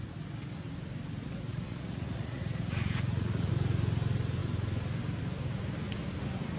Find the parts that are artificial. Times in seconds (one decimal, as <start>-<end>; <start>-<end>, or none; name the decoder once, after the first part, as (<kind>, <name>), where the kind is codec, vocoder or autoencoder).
1.5-3.5 (vocoder, Vocos)